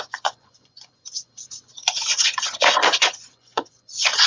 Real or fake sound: fake